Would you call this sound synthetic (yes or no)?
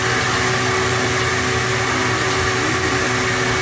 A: no